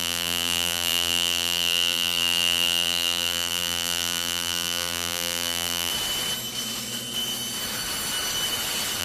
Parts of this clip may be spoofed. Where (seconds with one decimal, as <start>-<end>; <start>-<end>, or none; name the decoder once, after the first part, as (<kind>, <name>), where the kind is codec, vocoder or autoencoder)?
0.0-5.9 (vocoder, BigVGAN v2)